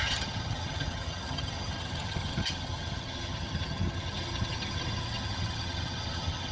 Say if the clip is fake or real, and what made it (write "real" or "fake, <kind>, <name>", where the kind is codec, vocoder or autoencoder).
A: fake, vocoder, HiFi-GAN